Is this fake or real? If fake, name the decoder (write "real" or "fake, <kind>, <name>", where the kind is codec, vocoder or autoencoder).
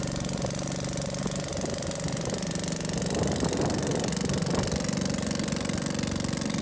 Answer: real